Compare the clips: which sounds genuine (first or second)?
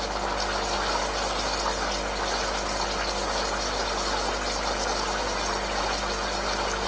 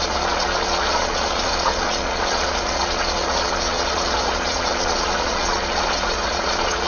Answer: first